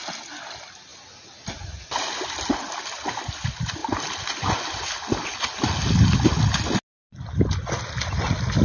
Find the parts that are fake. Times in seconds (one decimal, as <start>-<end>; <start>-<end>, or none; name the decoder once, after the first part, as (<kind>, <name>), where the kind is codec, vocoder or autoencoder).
none